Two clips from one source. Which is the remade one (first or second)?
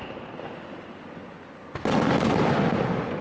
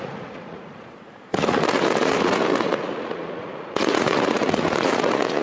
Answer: second